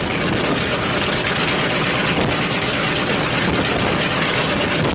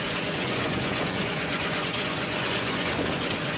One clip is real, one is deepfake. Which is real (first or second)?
first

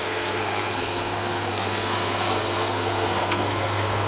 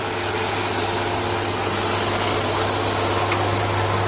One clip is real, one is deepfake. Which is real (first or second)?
second